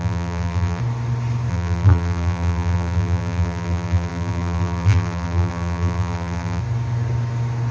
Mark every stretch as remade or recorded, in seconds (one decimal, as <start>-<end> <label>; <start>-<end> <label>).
0.0-0.8 remade; 0.8-1.5 recorded; 1.5-6.6 remade; 6.6-7.7 recorded